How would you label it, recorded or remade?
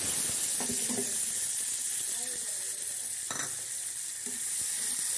recorded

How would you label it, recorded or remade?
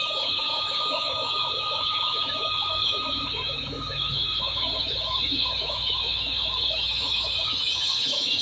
remade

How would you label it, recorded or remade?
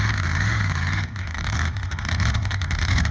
remade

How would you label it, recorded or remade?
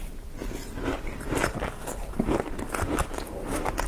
recorded